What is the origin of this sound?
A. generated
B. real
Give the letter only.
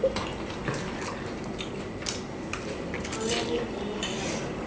B